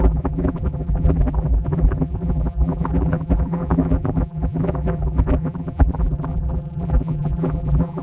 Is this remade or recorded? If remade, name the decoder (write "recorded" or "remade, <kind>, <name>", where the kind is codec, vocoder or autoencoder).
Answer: remade, vocoder, BigVGAN v2